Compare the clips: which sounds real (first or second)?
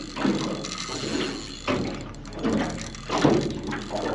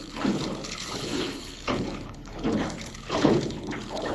first